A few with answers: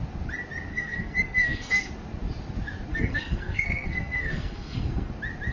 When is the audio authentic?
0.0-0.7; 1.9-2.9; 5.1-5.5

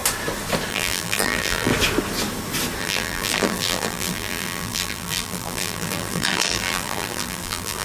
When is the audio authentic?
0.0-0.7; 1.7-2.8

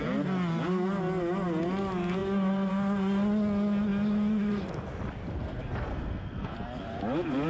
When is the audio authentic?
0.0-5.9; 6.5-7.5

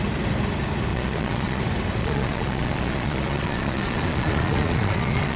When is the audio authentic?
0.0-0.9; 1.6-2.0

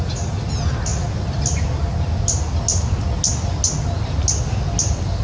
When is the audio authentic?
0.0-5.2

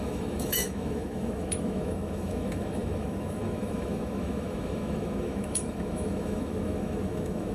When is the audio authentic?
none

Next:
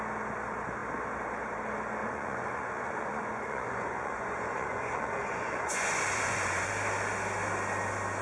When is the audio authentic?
0.0-2.0; 6.7-8.2